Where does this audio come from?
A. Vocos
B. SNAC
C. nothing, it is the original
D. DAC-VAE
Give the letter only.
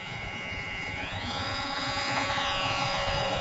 A